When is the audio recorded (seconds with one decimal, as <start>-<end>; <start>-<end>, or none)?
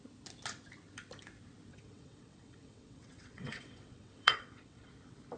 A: 0.0-1.7; 4.9-5.4